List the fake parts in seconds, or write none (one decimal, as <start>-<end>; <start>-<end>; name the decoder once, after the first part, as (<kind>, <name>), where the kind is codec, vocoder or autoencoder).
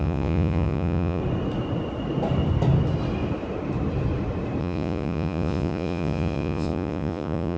0.0-1.2 (vocoder, Vocos); 4.6-7.6